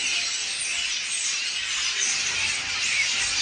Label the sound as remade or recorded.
recorded